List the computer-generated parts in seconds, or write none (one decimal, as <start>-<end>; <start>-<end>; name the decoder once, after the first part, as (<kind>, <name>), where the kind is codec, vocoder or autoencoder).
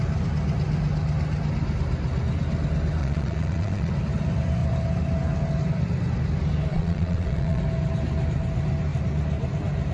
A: 3.0-3.9 (vocoder, Vocos); 6.7-7.6